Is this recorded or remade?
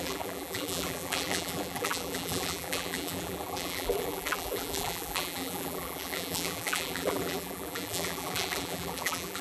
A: remade